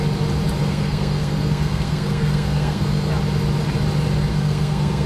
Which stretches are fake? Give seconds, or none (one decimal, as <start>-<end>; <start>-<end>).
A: 0.6-3.1; 4.3-5.1